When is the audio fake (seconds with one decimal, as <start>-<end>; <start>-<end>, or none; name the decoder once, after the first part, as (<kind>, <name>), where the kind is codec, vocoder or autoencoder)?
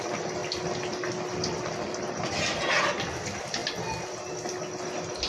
none